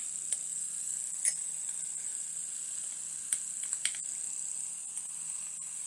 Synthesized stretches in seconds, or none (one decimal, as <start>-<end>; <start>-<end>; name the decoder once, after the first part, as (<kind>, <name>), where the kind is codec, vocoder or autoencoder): none